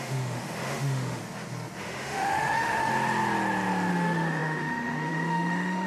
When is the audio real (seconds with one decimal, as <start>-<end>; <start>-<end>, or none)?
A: 1.2-1.8; 2.9-3.9